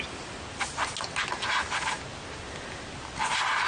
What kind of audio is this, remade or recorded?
recorded